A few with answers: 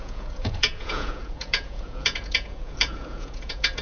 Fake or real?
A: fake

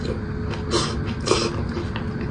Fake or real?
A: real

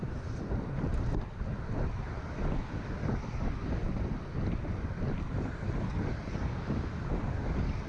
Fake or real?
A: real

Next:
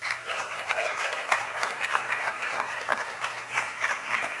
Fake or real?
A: fake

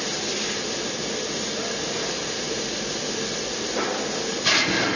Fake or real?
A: real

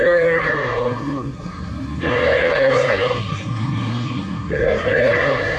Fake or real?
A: fake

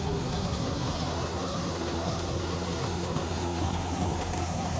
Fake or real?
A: fake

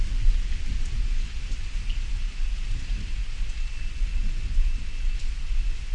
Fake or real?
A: real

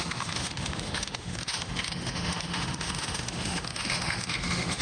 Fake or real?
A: fake